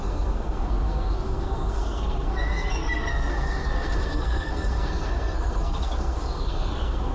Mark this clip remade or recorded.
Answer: remade